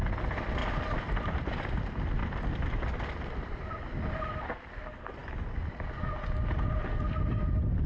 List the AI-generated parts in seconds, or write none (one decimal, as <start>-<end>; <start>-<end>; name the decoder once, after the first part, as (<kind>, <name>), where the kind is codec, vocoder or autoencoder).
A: 2.2-4.7 (vocoder, BigVGAN v2)